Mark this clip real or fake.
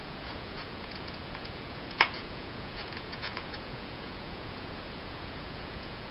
fake